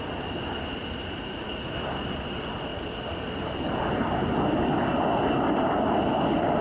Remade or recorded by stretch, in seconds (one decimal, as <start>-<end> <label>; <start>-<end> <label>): 0.0-0.8 recorded; 0.8-1.5 remade; 1.5-2.7 recorded; 2.7-4.2 remade; 4.2-6.6 recorded